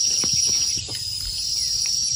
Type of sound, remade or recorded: remade